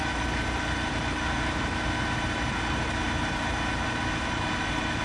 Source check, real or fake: fake